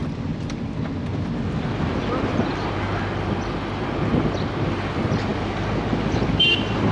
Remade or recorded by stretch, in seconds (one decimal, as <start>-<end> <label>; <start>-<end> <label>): 0.0-6.9 recorded